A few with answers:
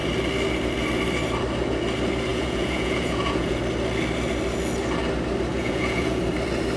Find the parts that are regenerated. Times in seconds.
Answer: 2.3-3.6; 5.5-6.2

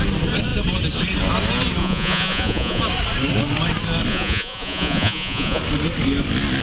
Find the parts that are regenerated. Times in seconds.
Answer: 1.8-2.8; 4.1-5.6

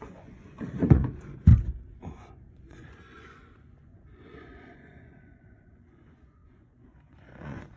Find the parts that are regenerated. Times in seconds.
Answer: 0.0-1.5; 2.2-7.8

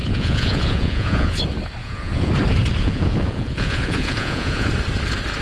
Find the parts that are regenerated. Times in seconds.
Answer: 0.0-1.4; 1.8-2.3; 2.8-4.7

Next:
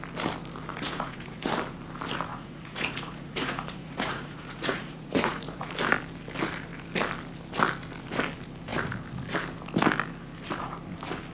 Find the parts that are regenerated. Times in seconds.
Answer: 0.7-1.5; 2.3-5.7

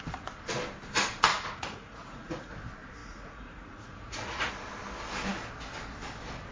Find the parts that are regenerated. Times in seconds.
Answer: 1.3-2.5; 3.0-4.5

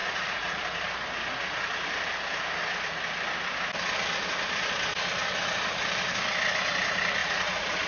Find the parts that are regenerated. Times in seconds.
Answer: 0.0-0.6; 7.2-7.9

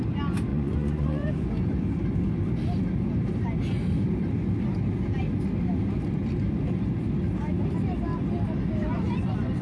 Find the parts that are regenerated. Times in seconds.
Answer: 0.5-1.3